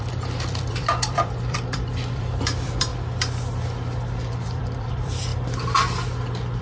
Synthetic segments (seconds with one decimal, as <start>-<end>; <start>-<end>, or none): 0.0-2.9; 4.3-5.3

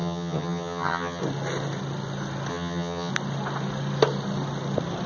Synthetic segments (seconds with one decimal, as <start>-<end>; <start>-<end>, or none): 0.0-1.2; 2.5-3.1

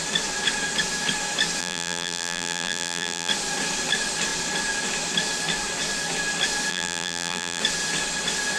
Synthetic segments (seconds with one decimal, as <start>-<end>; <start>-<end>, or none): 1.6-3.3; 6.7-7.6

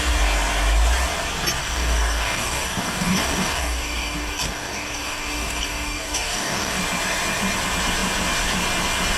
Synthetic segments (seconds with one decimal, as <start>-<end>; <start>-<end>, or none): 1.6-6.8

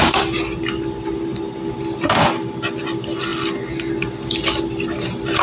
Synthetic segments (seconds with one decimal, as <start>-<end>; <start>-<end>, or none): none

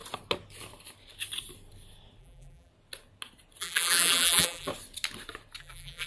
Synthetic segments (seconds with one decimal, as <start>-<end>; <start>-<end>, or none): 2.2-2.7; 3.6-4.7; 5.6-6.1

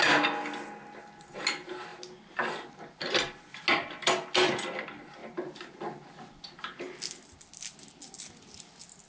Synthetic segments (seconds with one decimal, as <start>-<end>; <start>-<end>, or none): none